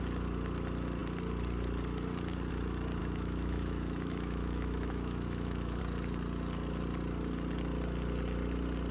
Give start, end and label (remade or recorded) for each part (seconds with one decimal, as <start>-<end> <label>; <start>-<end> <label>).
0.0-3.0 recorded; 3.0-5.8 remade; 5.8-8.9 recorded